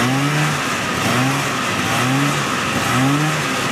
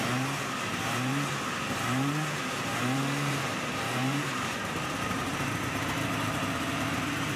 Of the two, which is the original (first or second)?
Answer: first